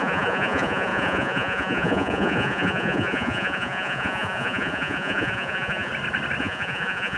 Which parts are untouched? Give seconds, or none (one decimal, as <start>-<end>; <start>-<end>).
5.9-6.4